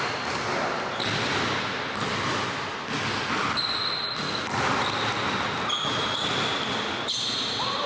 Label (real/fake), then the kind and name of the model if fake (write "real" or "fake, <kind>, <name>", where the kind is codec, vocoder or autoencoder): real